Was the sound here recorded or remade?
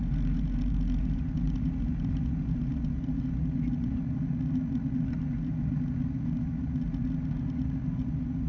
recorded